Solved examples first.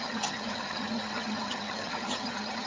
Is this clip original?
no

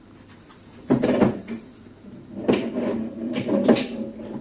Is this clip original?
yes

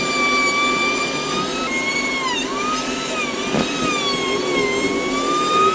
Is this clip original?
yes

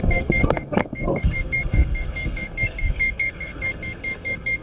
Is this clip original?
no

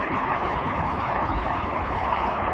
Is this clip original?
no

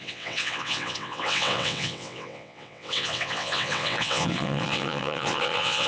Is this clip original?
no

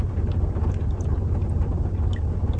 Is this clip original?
yes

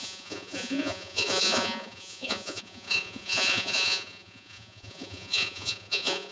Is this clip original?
no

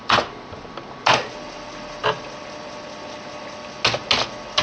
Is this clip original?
yes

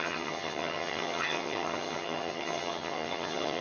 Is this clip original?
no